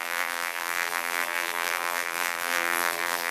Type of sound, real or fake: fake